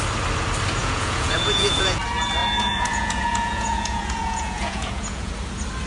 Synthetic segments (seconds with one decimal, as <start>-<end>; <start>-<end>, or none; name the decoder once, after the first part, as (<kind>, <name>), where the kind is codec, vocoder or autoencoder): 0.8-2.0 (vocoder, Vocos); 2.4-5.3